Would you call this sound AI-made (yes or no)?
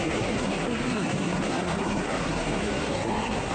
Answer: yes